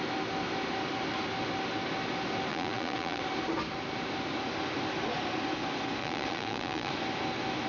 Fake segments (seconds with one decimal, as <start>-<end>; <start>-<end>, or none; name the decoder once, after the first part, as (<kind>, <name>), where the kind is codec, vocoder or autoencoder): 2.5-3.2 (vocoder, Vocos); 6.0-6.9